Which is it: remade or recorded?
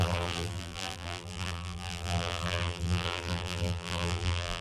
remade